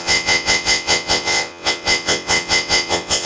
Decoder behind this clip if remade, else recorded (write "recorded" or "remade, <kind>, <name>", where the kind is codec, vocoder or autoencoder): remade, vocoder, WaveNeXt